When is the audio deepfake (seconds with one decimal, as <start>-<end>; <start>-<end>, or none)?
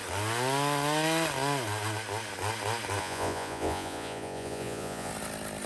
3.0-5.1